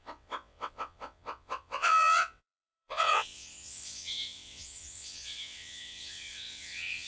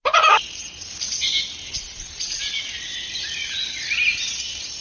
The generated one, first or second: first